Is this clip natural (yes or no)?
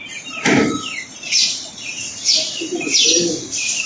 yes